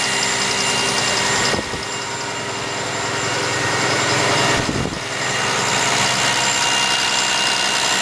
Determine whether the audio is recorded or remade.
recorded